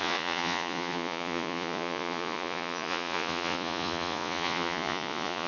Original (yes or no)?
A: no